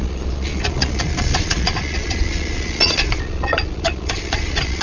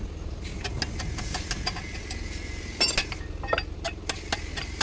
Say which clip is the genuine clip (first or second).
second